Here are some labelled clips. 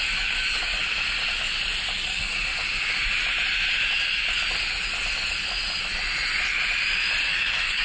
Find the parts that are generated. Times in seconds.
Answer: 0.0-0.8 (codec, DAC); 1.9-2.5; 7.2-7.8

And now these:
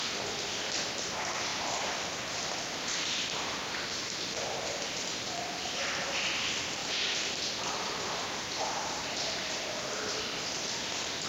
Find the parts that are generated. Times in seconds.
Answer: none

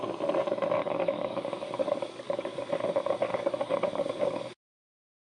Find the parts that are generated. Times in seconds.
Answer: 0.8-2.7 (codec, DAC); 3.3-4.4

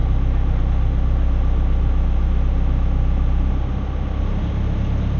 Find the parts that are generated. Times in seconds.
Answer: none

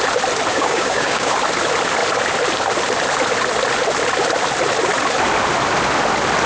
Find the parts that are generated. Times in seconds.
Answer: 0.5-1.3 (codec, DAC)

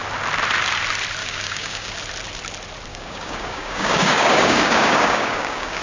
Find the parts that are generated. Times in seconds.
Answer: 1.2-1.9 (codec, DAC); 2.9-5.8